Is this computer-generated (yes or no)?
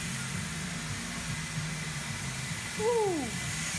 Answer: no